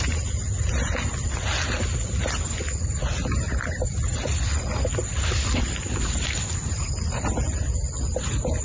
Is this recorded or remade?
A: recorded